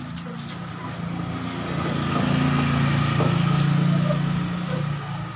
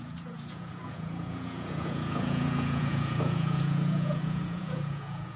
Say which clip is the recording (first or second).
first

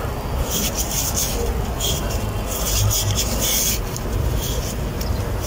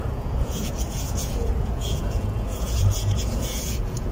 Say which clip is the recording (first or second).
first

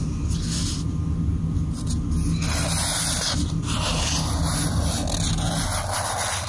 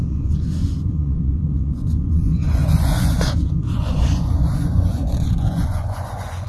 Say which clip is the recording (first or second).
first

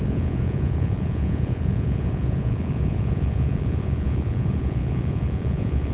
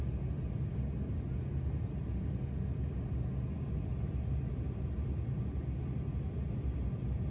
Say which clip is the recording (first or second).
second